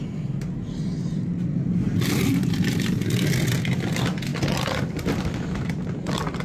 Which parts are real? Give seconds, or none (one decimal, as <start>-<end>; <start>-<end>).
0.0-1.3; 2.5-6.4